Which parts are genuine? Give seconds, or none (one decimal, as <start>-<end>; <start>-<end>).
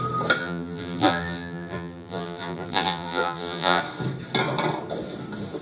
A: 0.0-0.4; 3.8-5.6